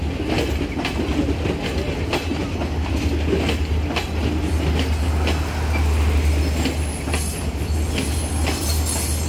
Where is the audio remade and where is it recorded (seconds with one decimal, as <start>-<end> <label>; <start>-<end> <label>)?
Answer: 0.0-2.4 recorded; 2.4-3.1 remade; 3.1-9.3 recorded